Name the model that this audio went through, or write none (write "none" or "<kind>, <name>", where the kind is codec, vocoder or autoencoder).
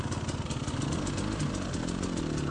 none